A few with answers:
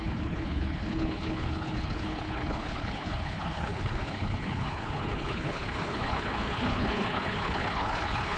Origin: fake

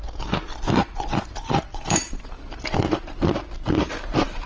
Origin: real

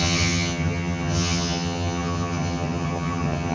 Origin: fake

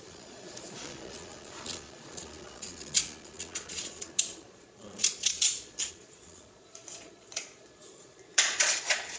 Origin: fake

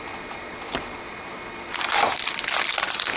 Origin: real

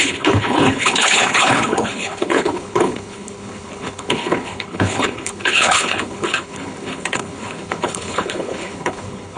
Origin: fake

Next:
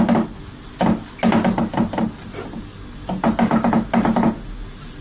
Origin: real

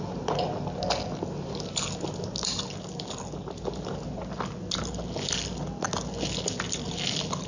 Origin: real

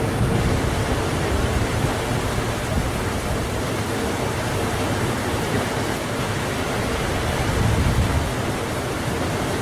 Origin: real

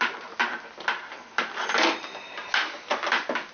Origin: real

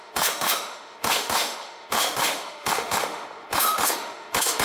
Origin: fake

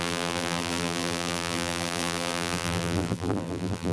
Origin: fake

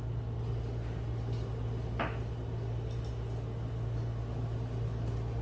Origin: real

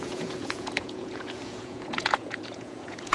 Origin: fake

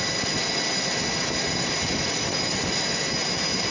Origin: real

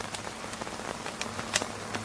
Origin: real